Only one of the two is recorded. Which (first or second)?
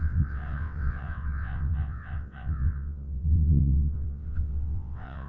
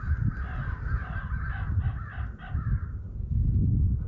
second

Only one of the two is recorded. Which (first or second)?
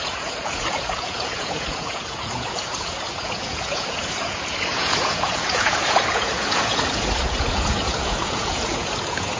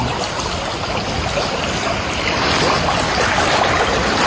second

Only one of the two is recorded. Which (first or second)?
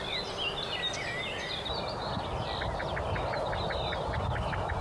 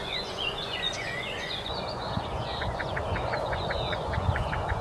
first